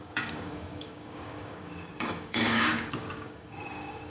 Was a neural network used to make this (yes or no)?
yes